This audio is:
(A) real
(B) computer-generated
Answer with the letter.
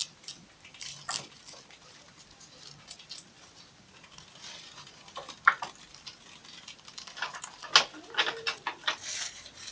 A